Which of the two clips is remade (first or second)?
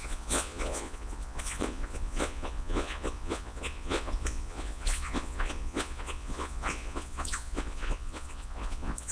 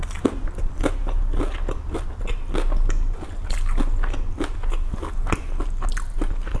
first